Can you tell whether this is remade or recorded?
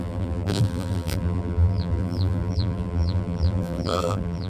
remade